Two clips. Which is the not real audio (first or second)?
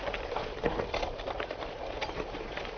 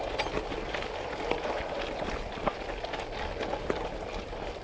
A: first